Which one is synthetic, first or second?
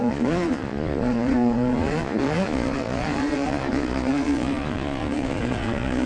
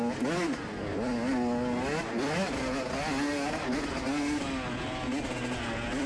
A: first